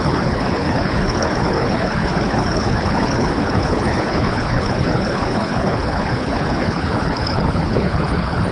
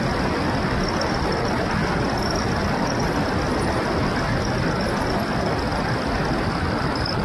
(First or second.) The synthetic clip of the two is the first